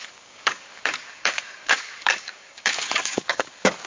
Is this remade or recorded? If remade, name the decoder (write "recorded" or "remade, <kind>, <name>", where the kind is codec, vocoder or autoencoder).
remade, codec, DAC